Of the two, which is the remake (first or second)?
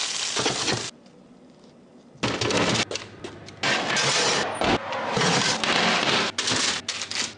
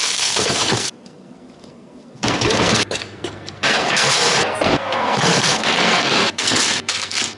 second